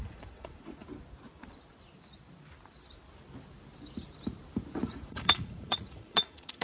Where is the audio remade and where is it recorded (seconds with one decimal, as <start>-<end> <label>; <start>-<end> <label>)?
0.0-0.8 remade; 0.8-4.8 recorded; 4.8-6.6 remade

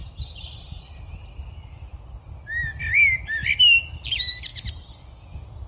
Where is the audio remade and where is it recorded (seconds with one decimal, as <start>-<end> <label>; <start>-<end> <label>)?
0.0-5.7 recorded

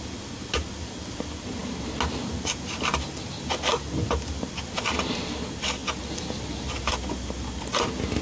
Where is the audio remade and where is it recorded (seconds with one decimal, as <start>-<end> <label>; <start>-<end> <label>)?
0.0-8.2 recorded

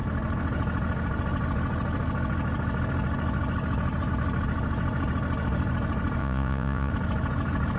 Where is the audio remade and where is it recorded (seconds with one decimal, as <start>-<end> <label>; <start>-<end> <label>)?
0.0-6.2 recorded; 6.2-6.9 remade; 6.9-7.8 recorded

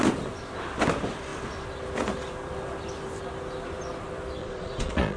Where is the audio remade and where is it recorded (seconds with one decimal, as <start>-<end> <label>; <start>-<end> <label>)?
0.0-4.4 recorded; 4.4-5.2 remade

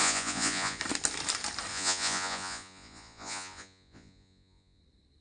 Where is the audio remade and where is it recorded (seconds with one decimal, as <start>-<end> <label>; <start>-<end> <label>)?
0.0-0.8 remade; 0.8-1.7 recorded; 1.7-4.8 remade; 4.8-5.2 recorded

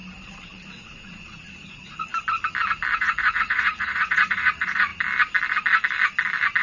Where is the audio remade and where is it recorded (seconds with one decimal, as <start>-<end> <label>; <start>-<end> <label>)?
0.0-0.7 recorded; 0.7-2.1 remade; 2.1-3.0 recorded; 3.0-4.9 remade; 4.9-6.6 recorded

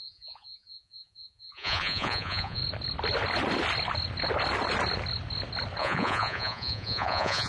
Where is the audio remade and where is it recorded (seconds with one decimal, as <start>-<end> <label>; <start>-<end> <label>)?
0.0-2.6 remade; 2.6-5.8 recorded; 5.8-7.5 remade